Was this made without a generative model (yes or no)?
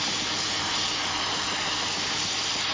no